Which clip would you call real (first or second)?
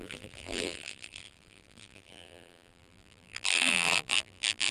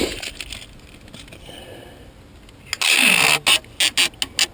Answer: second